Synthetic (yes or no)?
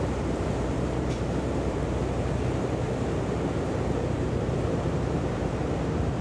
yes